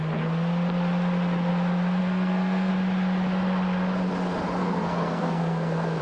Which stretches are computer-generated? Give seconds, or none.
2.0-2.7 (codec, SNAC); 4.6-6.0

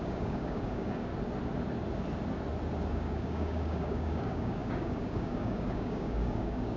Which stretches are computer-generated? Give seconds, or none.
0.0-1.1 (codec, DAC); 2.9-6.8

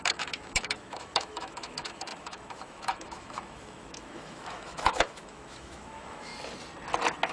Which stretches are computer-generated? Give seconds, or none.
0.0-6.3 (autoencoder, DAC-VAE)